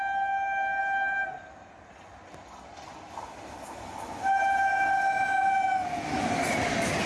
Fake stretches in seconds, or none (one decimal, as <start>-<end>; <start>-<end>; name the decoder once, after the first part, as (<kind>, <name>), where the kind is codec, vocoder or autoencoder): none